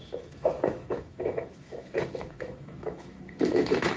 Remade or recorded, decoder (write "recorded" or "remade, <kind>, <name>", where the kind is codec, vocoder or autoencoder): remade, autoencoder, DAC-VAE